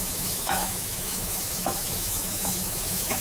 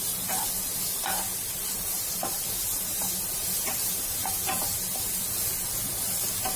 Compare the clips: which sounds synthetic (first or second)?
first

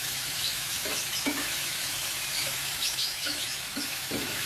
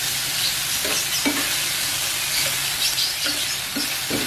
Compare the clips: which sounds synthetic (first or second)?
first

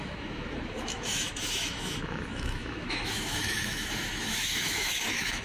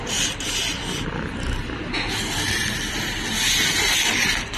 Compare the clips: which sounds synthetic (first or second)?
first